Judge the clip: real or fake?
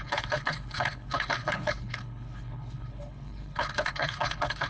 fake